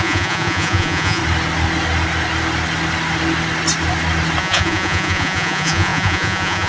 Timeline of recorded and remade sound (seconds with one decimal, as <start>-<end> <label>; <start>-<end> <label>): 0.0-1.2 remade; 1.2-4.4 recorded; 4.4-6.7 remade